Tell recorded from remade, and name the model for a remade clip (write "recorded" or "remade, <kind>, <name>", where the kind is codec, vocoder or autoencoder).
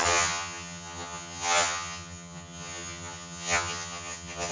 remade, vocoder, HiFi-GAN